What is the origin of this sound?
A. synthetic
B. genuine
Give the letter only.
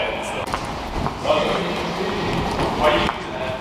B